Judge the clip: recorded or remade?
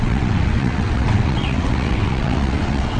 remade